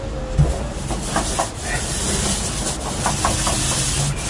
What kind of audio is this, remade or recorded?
recorded